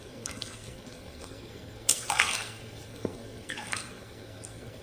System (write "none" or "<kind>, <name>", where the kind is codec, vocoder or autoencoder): codec, SNAC